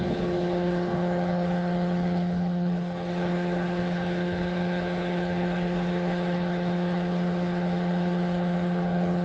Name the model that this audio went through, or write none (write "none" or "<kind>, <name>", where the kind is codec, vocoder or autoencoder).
codec, HILCodec